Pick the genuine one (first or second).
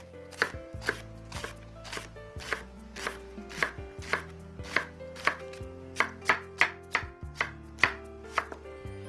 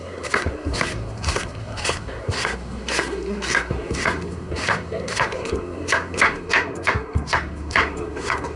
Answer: first